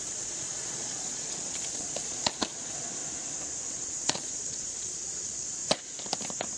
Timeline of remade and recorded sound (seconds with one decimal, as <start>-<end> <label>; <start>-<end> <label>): 0.0-3.0 remade; 3.0-3.7 recorded; 3.7-5.6 remade; 5.6-6.6 recorded